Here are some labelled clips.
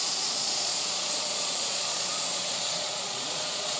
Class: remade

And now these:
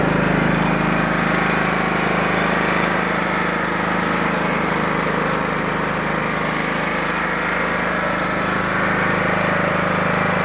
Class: recorded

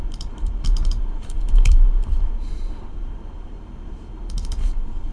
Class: remade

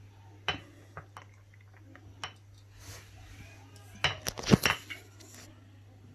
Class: recorded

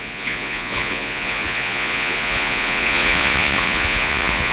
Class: remade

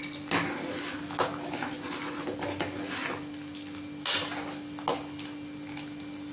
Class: recorded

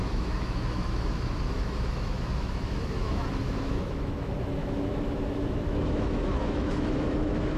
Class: remade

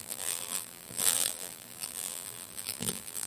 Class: remade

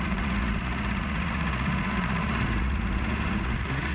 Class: remade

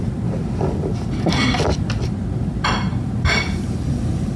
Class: recorded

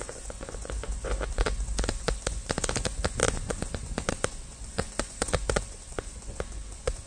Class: remade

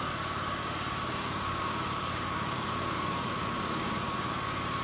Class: remade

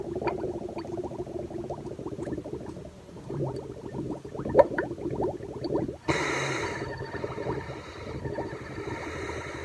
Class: remade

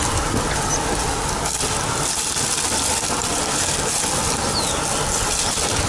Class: recorded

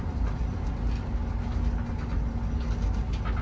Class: recorded